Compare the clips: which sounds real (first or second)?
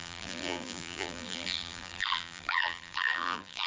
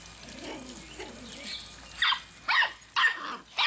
second